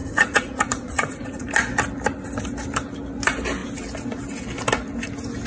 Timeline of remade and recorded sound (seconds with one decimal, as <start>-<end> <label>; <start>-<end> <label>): 0.0-1.5 remade; 1.5-5.5 recorded